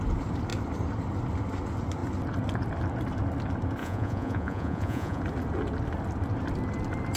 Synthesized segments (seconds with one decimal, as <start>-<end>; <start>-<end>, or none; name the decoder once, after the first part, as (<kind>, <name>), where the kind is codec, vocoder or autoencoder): 3.8-5.2 (vocoder, Vocos)